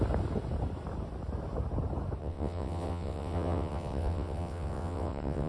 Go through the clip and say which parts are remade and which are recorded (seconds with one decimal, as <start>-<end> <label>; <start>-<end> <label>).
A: 0.0-2.2 recorded; 2.2-5.5 remade